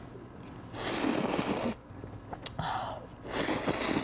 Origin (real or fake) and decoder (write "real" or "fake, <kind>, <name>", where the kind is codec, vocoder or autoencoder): real